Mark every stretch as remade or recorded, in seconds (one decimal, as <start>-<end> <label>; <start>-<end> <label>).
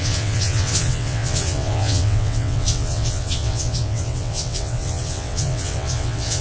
0.0-6.4 remade